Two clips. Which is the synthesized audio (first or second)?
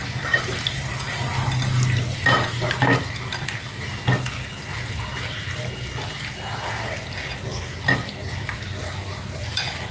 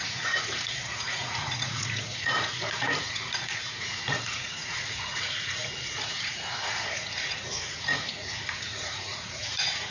second